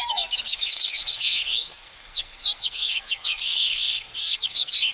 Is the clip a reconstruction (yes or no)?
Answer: yes